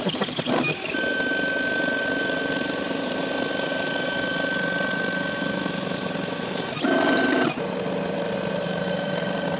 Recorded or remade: recorded